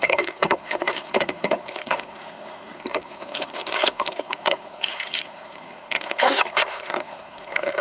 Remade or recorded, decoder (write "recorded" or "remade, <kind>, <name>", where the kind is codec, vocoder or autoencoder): remade, codec, SNAC